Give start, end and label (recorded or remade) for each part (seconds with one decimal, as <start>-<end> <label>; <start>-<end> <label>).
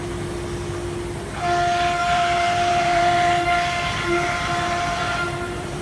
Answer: 0.0-2.0 recorded; 2.0-5.8 remade